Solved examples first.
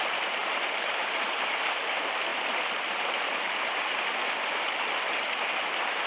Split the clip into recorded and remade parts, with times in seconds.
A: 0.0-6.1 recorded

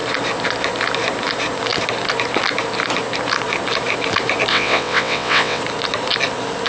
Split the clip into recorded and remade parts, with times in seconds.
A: 0.0-4.5 recorded; 4.5-5.6 remade; 5.6-6.7 recorded

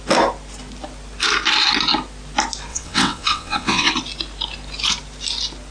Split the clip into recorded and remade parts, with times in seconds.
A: 0.0-2.7 recorded; 2.7-3.9 remade; 3.9-5.7 recorded

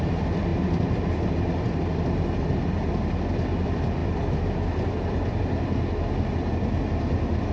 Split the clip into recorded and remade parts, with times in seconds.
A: 0.0-7.5 recorded

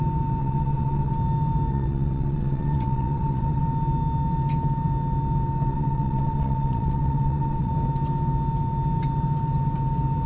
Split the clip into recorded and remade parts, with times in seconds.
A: 0.0-0.4 recorded; 0.4-1.1 remade; 1.1-1.7 recorded; 1.7-3.6 remade; 3.6-5.7 recorded; 5.7-7.7 remade; 7.7-10.3 recorded

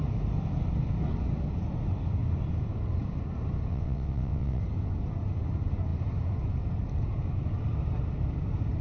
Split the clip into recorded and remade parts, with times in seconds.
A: 0.0-3.7 recorded; 3.7-4.6 remade; 4.6-8.8 recorded

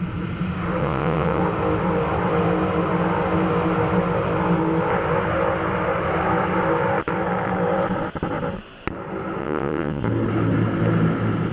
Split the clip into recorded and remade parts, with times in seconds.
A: 0.0-0.8 recorded; 0.8-1.4 remade; 1.4-9.4 recorded; 9.4-10.0 remade; 10.0-11.5 recorded

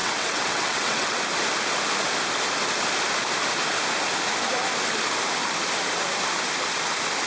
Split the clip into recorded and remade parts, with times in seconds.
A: 0.0-1.2 remade; 1.2-7.3 recorded